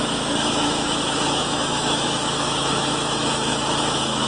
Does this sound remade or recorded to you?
remade